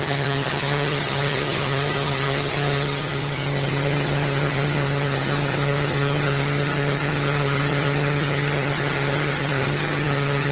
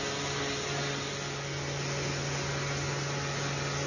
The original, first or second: second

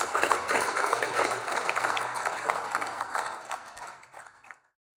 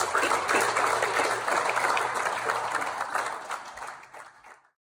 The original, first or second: second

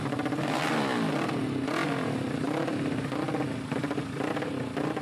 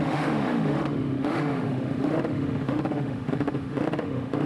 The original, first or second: first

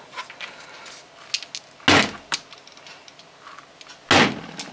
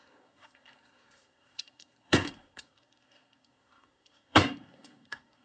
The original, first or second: first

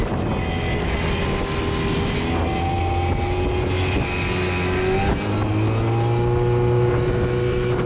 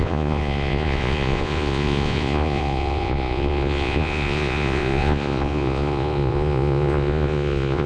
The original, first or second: first